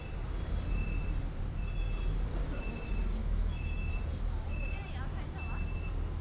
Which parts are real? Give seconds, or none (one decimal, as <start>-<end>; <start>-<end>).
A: 0.0-3.2; 3.9-6.2

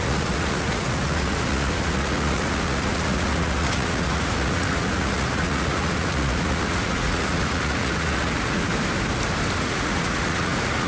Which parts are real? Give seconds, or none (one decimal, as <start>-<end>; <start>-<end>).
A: 8.7-9.6

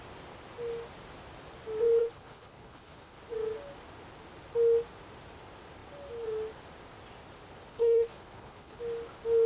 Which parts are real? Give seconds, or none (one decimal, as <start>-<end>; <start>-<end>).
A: 0.0-2.0; 3.2-7.7; 8.8-9.5

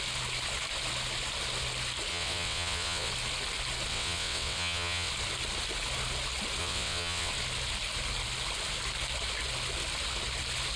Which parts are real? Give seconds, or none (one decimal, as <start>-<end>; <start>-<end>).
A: 0.0-2.1; 3.1-3.9; 5.1-6.6; 7.3-10.8

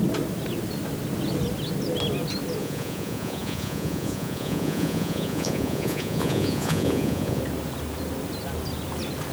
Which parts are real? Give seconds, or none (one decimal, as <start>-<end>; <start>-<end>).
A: 0.0-2.6; 7.4-9.3

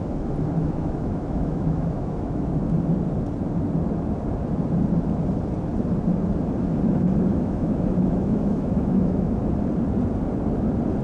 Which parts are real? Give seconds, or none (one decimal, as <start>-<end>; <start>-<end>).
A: 0.0-0.6; 2.4-7.3; 9.4-11.0

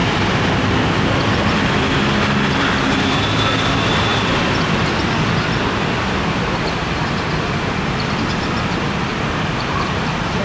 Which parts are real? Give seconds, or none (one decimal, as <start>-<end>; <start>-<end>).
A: 0.7-9.1

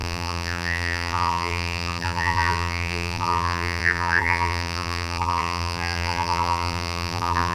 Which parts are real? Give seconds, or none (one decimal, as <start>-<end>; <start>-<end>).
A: none